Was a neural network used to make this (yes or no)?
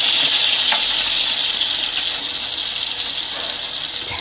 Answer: no